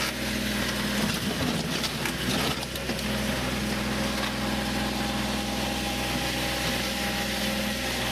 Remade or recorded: recorded